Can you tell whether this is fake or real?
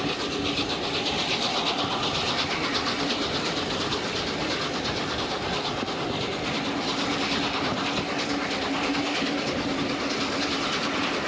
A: real